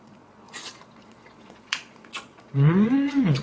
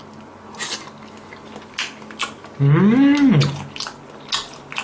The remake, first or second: first